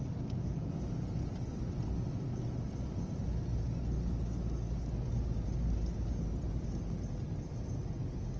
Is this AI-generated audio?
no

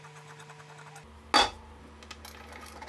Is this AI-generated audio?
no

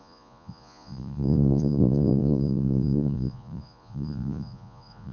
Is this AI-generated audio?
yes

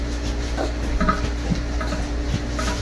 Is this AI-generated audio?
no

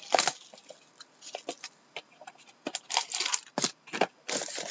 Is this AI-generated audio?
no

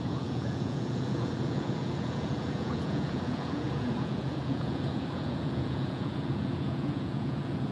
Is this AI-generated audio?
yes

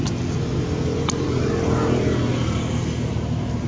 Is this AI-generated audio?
no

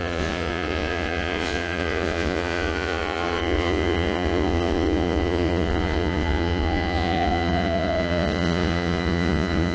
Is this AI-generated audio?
yes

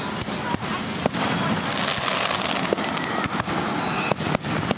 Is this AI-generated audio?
no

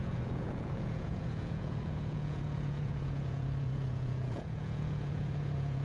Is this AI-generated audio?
yes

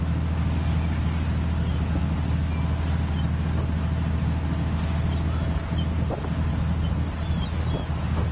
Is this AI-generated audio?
no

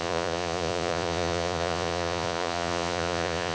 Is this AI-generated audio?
yes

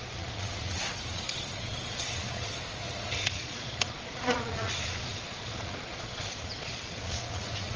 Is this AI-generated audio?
yes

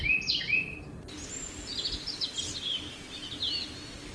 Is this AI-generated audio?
no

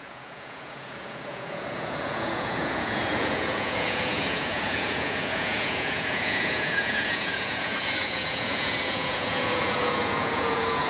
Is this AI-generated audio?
yes